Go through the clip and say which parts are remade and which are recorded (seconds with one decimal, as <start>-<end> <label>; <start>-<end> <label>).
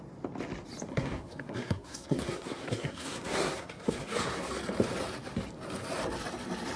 0.0-0.9 recorded; 0.9-4.5 remade; 4.5-6.8 recorded